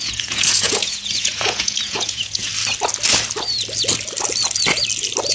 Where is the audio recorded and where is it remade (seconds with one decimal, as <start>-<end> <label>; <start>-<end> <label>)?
0.0-2.5 remade; 2.5-5.3 recorded